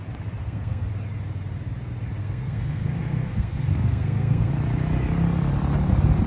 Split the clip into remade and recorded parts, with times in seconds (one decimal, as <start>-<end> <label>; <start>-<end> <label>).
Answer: 0.0-0.4 recorded; 0.4-0.9 remade; 0.9-2.2 recorded; 2.2-4.5 remade; 4.5-6.3 recorded

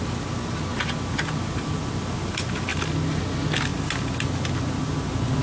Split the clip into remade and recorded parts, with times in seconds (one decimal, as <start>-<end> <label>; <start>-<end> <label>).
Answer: 0.0-5.4 recorded

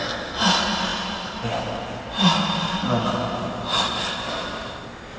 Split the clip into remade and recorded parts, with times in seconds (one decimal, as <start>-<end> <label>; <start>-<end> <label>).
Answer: 0.0-5.2 recorded